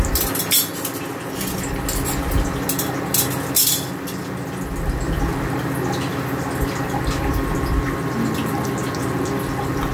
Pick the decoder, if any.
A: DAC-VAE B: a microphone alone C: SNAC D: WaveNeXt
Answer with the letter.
B